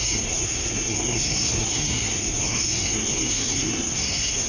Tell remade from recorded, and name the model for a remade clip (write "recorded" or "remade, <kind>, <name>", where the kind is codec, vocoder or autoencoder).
remade, codec, SNAC